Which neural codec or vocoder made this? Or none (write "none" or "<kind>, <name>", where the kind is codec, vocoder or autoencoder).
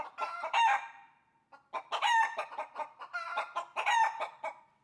none